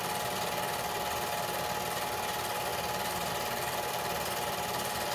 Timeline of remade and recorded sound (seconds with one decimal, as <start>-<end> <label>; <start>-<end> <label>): 0.0-5.1 recorded

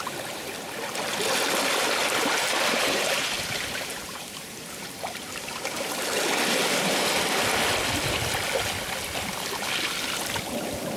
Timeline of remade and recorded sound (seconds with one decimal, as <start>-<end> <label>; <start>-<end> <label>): 0.0-2.0 recorded; 2.0-5.9 remade; 5.9-11.0 recorded

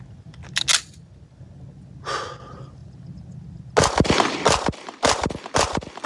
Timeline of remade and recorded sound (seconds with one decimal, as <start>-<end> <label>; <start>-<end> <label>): 0.0-6.1 recorded

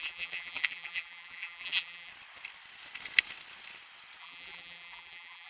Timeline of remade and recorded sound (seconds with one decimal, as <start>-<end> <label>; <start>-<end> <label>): 0.0-2.1 remade; 2.1-4.2 recorded; 4.2-5.5 remade

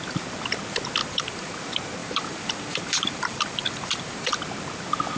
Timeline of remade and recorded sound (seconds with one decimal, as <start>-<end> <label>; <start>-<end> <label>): 0.0-1.0 recorded; 1.0-1.6 remade; 1.6-2.0 recorded; 2.0-4.4 remade; 4.4-5.2 recorded